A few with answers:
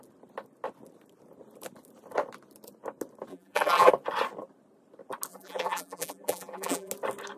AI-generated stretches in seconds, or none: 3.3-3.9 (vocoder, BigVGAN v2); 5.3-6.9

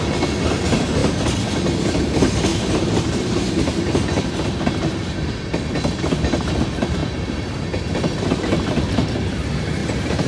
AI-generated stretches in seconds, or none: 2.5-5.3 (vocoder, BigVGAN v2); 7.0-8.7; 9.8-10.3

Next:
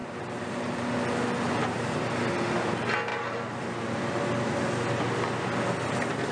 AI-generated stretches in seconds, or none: 0.0-1.0 (vocoder, BigVGAN v2); 1.6-2.2

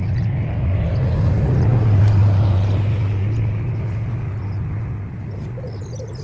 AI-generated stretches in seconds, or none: none